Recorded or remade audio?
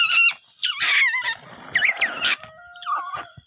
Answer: recorded